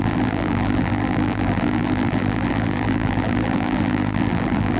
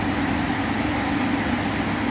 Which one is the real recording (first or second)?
second